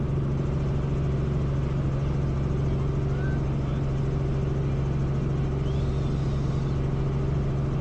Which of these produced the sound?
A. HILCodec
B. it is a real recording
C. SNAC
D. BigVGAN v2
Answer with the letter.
B